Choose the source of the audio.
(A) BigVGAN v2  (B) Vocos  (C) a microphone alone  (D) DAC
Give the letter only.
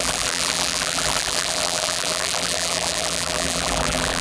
A